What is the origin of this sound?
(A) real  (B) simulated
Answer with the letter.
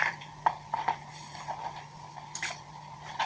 A